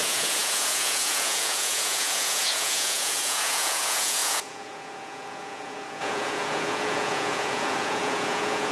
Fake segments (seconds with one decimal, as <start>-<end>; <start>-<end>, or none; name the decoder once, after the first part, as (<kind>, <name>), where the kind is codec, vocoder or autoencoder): 0.0-8.7 (vocoder, Vocos)